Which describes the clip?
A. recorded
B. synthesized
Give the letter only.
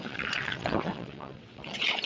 B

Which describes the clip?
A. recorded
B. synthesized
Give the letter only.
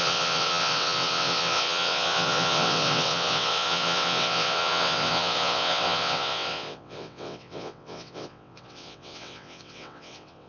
B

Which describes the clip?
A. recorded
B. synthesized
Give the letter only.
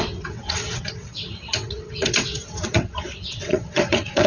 B